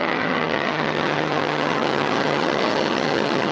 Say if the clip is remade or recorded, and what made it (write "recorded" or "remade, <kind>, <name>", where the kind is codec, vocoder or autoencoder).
remade, vocoder, HiFi-GAN